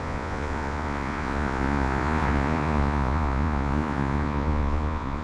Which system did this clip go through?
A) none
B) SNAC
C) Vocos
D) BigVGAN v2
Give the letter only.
C